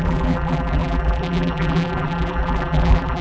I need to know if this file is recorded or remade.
remade